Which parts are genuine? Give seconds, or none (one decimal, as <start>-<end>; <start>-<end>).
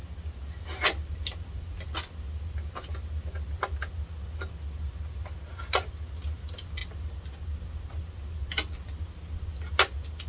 0.0-10.3